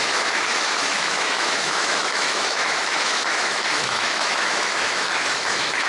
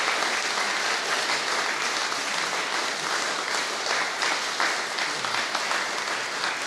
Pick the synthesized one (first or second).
first